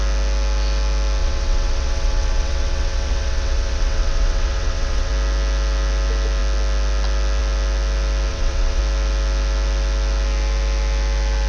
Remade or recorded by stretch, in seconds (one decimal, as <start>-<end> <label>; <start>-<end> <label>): 0.0-1.2 recorded; 1.2-5.1 remade; 5.1-8.3 recorded; 8.3-8.8 remade; 8.8-11.5 recorded